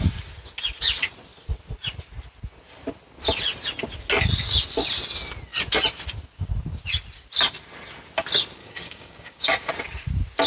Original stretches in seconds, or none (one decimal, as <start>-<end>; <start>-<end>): 0.0-8.6; 9.7-10.5